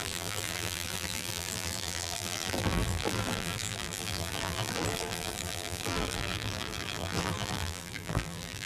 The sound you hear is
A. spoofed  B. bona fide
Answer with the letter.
A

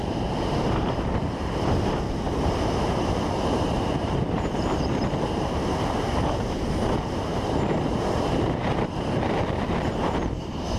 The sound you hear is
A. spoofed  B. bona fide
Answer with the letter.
A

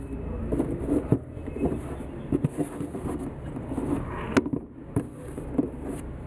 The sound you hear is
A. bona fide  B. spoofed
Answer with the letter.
A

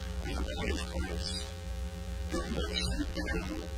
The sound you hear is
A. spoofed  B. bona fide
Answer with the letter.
A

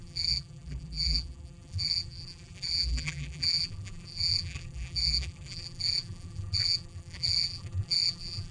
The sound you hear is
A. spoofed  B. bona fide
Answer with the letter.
A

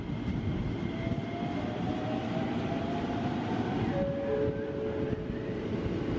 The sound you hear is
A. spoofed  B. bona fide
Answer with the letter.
B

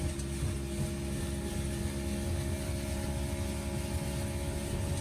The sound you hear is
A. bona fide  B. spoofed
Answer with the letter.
A